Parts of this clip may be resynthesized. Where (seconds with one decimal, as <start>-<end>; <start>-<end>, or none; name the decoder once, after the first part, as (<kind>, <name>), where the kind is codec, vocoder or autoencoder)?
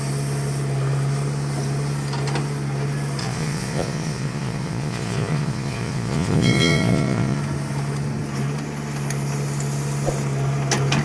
3.2-7.4 (vocoder, Vocos)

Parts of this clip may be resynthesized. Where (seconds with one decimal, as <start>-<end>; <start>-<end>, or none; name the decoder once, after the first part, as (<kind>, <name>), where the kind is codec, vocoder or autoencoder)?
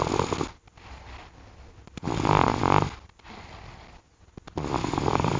4.8-5.4 (codec, DAC)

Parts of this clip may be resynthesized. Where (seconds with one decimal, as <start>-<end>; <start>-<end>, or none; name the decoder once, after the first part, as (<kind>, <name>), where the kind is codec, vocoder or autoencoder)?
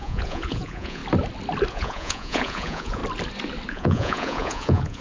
0.0-1.0 (vocoder, Vocos); 1.7-3.0; 3.7-5.0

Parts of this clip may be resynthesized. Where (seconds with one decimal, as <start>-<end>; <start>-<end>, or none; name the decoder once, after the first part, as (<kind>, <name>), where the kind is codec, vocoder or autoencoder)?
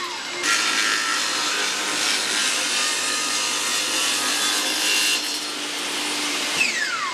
1.1-1.8 (vocoder, BigVGAN v2); 2.4-7.1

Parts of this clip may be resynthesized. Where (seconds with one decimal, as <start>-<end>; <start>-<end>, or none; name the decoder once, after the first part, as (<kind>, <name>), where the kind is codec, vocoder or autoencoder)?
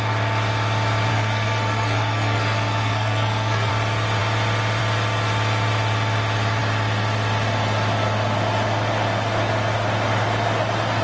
1.1-3.7 (codec, SNAC)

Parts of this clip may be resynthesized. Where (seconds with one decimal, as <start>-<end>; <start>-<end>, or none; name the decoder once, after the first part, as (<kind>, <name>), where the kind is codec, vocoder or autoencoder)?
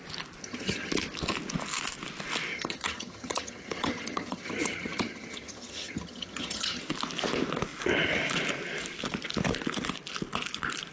0.4-0.9 (vocoder, HiFi-GAN); 2.5-6.8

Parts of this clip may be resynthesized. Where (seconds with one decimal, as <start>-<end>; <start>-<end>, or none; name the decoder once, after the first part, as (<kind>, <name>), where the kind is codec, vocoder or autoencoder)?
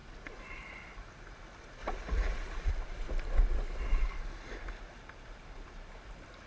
1.8-2.7 (vocoder, Vocos)